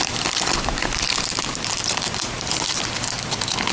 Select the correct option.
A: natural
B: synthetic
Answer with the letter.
B